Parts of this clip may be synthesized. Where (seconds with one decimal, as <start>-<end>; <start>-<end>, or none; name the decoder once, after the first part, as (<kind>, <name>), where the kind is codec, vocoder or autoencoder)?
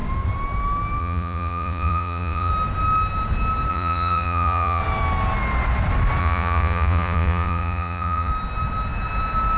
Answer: 1.0-2.5 (vocoder, Vocos); 3.7-4.8; 6.2-8.3